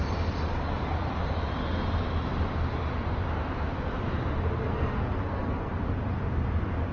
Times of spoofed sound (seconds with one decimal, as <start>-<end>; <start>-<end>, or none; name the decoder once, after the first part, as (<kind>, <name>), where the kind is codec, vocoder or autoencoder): 4.6-5.7 (codec, SNAC)